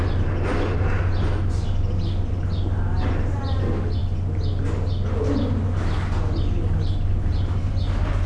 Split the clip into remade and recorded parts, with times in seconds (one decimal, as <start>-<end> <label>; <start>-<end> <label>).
0.0-8.3 recorded